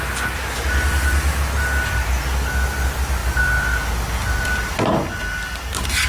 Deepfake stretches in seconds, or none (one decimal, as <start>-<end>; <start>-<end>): none